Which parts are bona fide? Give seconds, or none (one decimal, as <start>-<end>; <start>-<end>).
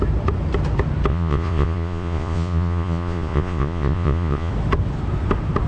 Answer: 0.0-1.1; 4.5-5.7